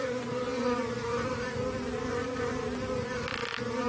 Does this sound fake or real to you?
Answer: real